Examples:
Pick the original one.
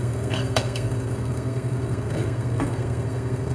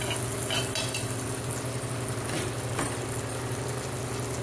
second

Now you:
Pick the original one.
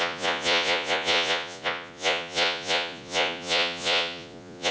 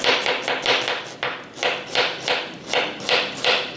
second